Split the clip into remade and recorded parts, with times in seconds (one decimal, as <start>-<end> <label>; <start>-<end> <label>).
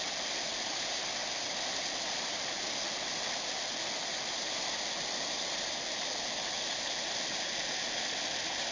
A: 0.0-8.7 recorded